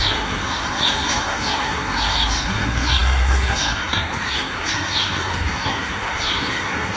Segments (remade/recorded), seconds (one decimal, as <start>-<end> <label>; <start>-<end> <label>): 0.0-7.0 remade